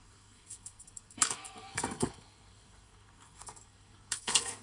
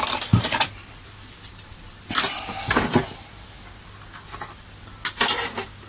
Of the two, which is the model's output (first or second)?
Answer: first